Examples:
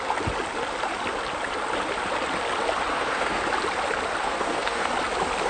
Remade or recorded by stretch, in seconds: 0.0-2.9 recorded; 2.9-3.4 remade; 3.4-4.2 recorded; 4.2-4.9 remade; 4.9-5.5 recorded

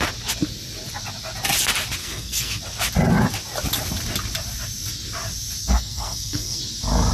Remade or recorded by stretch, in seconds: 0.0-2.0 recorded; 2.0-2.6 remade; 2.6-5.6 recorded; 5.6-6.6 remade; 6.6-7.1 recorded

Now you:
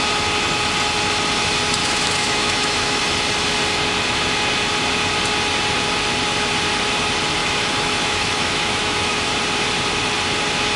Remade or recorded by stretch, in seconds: 0.0-1.8 recorded; 1.8-3.0 remade; 3.0-7.4 recorded; 7.4-9.3 remade; 9.3-10.8 recorded

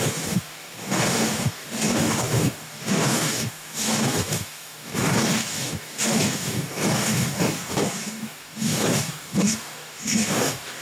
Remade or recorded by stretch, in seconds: 0.0-10.8 remade

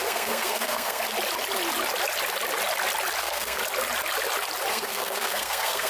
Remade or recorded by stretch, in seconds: 0.0-1.0 remade; 1.0-3.2 recorded; 3.2-3.6 remade; 3.6-4.7 recorded; 4.7-5.9 remade

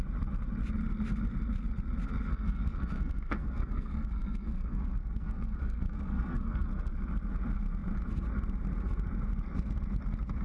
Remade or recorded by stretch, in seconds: 0.0-2.3 recorded; 2.3-6.9 remade; 6.9-10.4 recorded